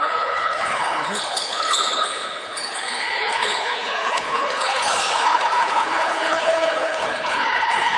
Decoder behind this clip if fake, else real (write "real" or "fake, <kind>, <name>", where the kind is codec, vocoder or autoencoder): fake, codec, HILCodec